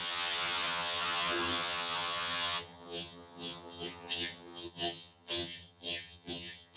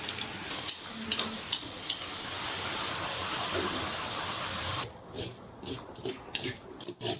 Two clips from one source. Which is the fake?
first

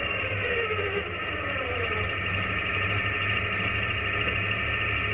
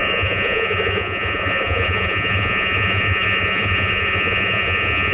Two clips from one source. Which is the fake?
second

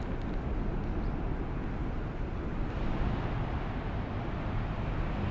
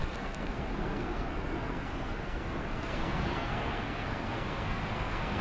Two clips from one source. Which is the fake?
second